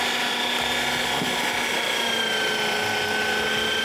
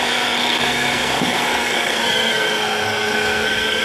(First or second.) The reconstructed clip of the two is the second